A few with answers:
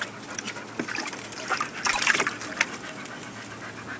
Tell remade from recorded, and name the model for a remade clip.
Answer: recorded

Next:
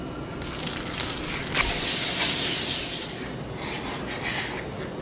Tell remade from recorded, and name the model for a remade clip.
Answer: recorded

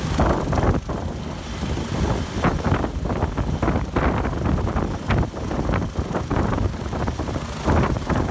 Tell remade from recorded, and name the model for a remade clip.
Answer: recorded